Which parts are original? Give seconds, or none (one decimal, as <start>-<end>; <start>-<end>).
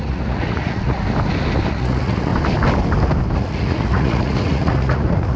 1.0-1.7; 2.3-3.4